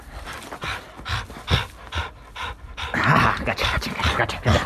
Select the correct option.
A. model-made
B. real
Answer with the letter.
B